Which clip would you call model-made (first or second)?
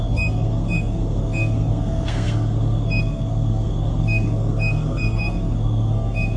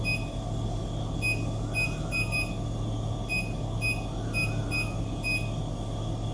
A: first